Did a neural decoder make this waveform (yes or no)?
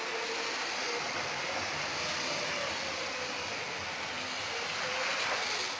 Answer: no